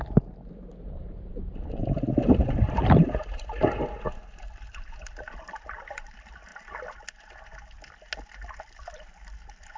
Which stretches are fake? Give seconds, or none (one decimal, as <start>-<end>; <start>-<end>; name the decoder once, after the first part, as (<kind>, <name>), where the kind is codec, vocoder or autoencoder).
none